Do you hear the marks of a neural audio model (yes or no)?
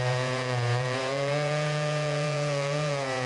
yes